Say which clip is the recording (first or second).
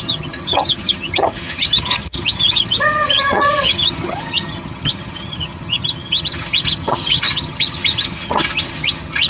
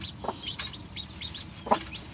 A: second